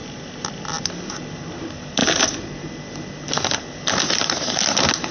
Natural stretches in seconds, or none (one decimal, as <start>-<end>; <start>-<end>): 0.9-5.1